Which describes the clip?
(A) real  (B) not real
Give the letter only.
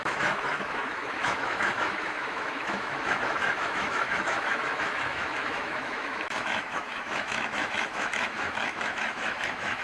B